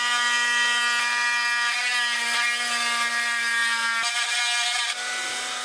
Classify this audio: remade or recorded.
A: recorded